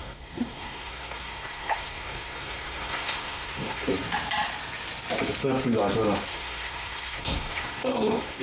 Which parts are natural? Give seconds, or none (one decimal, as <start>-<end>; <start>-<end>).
3.9-6.3